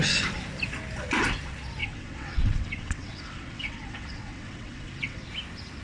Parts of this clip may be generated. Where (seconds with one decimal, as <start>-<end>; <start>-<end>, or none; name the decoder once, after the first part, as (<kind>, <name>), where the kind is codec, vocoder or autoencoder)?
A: 1.8-5.3 (vocoder, WaveNeXt)